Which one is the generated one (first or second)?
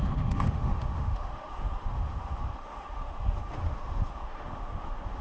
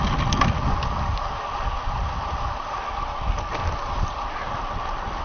first